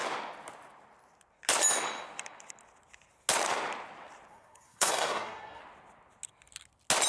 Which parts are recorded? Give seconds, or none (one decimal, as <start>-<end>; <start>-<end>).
0.0-4.3; 5.6-7.1